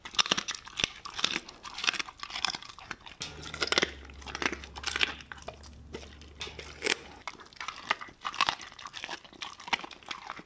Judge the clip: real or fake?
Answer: real